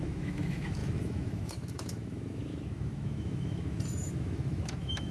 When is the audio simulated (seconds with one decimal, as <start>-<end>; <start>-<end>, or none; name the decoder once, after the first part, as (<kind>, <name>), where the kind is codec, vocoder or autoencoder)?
0.0-5.1 (autoencoder, DAC-VAE)